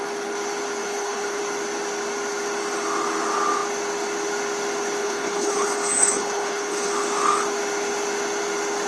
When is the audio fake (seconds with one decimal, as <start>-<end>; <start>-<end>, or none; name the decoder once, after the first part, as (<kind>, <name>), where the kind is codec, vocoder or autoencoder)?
0.8-1.4 (codec, HILCodec); 5.0-6.9